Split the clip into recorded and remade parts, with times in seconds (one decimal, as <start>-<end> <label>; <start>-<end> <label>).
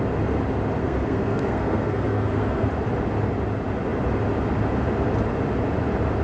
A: 0.0-0.8 recorded; 0.8-2.7 remade; 2.7-6.2 recorded